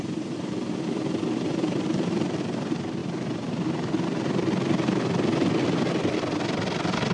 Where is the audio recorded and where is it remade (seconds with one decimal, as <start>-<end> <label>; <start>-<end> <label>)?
0.0-7.1 recorded